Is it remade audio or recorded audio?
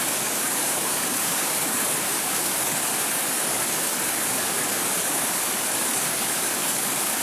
remade